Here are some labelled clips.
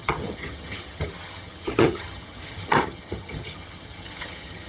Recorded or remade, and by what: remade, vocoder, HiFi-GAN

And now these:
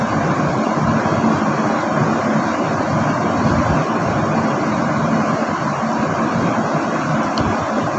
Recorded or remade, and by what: recorded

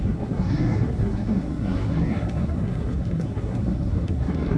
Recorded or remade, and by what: remade, codec, SNAC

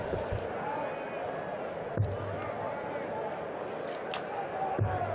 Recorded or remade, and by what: recorded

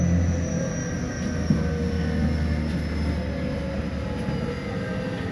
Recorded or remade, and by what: recorded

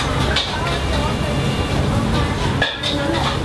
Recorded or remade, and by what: recorded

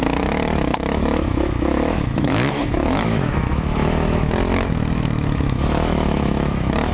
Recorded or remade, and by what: remade, autoencoder, DAC-VAE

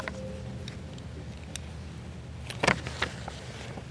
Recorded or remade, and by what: recorded